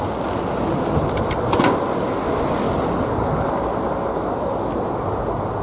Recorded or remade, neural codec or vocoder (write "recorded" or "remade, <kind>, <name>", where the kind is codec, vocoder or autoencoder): recorded